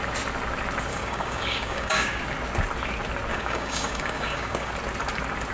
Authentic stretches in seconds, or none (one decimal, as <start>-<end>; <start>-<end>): 0.0-0.9; 2.2-3.3; 4.7-5.5